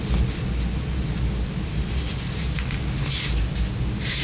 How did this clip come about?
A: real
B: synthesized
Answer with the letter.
A